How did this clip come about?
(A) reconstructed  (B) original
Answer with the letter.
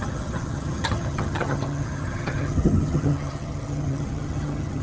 A